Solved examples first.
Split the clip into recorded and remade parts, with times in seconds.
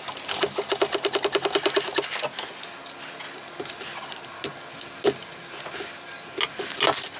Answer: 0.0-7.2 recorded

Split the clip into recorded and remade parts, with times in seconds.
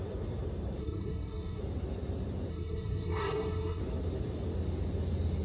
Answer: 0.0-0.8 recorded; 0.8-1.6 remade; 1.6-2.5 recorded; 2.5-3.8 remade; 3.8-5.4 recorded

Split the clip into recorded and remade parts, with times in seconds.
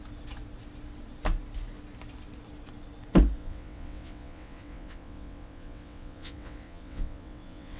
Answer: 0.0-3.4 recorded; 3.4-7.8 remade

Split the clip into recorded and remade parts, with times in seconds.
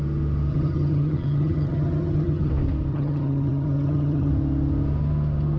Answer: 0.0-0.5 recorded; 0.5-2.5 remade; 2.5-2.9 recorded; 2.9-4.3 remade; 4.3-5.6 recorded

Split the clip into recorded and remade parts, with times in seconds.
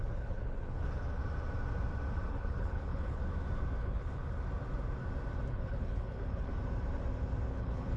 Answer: 0.0-1.2 remade; 1.2-2.3 recorded; 2.3-3.2 remade; 3.2-3.8 recorded; 3.8-4.2 remade; 4.2-5.5 recorded; 5.5-6.5 remade; 6.5-7.5 recorded; 7.5-8.0 remade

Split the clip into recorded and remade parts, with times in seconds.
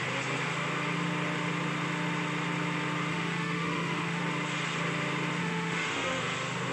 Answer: 0.0-3.1 recorded; 3.1-4.2 remade; 4.2-5.4 recorded; 5.4-6.2 remade; 6.2-6.7 recorded